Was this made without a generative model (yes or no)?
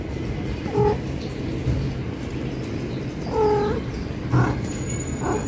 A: yes